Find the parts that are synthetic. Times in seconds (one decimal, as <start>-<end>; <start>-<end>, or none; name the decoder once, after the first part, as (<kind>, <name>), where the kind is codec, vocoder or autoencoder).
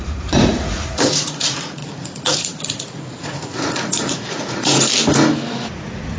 0.0-4.9 (vocoder, Vocos); 5.5-6.2